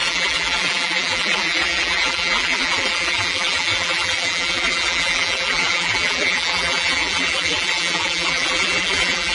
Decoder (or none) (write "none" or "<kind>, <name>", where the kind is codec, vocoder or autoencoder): vocoder, BigVGAN v2